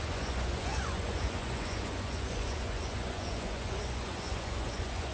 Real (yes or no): no